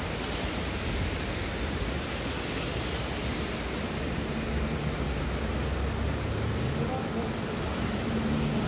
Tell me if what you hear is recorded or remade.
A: recorded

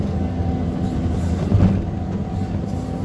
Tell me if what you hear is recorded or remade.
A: recorded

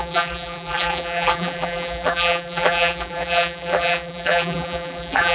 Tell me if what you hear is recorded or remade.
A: remade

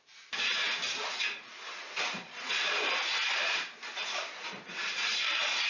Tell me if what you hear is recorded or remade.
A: remade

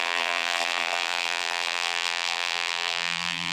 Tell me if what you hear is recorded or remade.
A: remade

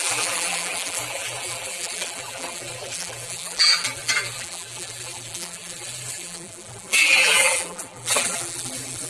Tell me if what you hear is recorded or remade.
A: remade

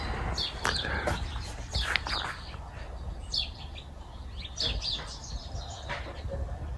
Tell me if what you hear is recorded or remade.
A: recorded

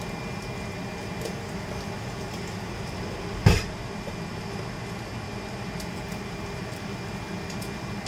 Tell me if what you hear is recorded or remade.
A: recorded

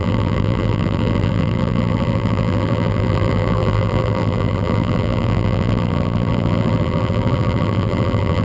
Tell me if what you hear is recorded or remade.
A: remade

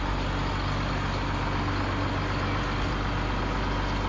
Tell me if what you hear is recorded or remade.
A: recorded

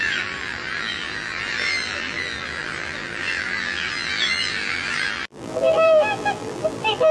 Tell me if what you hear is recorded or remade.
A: remade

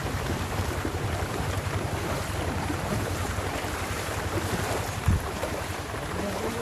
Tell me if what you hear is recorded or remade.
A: remade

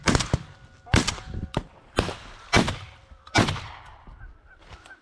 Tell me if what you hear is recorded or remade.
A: remade